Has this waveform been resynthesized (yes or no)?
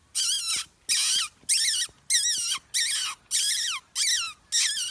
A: no